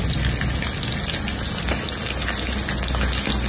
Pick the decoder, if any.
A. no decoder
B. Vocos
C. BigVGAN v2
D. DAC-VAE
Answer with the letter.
A